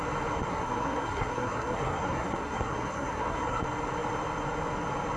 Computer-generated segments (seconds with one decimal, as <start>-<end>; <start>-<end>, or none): 0.5-3.6